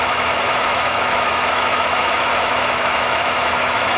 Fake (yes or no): yes